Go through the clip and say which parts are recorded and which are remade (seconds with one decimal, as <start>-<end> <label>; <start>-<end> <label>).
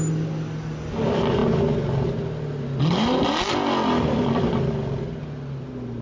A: 0.0-6.0 recorded